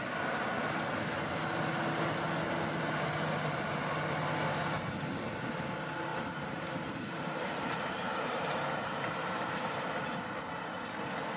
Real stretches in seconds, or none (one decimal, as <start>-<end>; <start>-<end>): 0.0-6.1; 10.3-11.4